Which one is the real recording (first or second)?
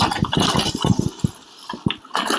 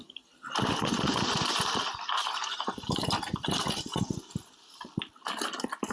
first